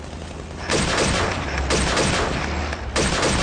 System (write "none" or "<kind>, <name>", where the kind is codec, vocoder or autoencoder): none